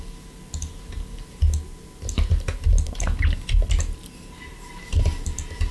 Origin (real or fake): real